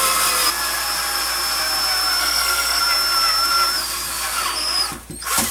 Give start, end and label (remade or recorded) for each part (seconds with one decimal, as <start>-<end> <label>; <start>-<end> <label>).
0.0-2.2 recorded; 2.2-2.8 remade; 2.8-5.5 recorded